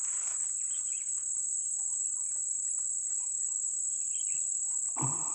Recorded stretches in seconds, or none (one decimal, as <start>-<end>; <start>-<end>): 0.0-5.3